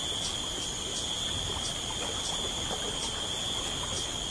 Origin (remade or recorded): recorded